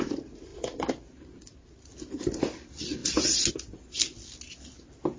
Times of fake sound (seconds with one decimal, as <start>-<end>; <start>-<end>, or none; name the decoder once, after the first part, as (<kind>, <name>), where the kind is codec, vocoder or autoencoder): 0.5-2.4 (vocoder, BigVGAN v2)